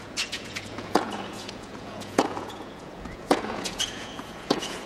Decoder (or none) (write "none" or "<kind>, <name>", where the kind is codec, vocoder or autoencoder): vocoder, Vocos